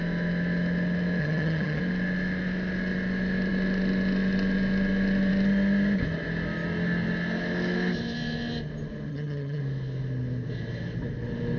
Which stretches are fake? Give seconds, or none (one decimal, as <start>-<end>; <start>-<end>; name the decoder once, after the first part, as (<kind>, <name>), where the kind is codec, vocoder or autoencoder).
1.2-1.8 (vocoder, HiFi-GAN); 9.1-9.6

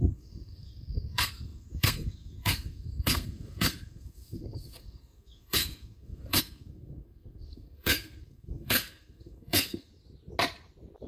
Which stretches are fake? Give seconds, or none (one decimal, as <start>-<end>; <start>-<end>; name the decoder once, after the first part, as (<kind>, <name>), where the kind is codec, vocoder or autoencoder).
0.0-9.9 (codec, SNAC)

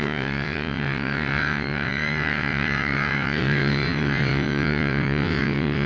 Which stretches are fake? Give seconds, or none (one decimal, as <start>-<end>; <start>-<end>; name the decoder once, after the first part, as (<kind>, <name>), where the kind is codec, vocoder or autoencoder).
0.0-5.9 (vocoder, WaveNeXt)